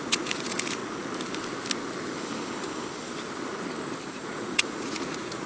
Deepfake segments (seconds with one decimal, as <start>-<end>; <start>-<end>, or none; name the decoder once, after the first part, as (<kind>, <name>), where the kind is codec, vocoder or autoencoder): 0.0-0.8 (vocoder, Vocos); 4.1-5.5